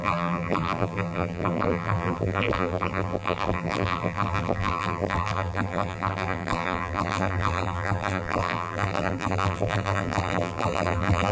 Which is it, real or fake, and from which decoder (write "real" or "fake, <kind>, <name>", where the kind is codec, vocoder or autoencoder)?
fake, vocoder, BigVGAN v2